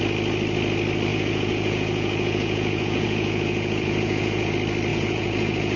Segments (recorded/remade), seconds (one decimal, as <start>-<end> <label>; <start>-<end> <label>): 0.0-1.1 recorded; 1.1-4.5 remade; 4.5-4.9 recorded; 4.9-5.8 remade